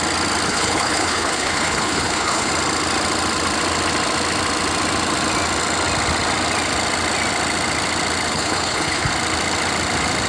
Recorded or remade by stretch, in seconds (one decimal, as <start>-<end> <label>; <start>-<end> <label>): 0.0-0.5 recorded; 0.5-2.5 remade; 2.5-8.3 recorded; 8.3-9.1 remade; 9.1-10.3 recorded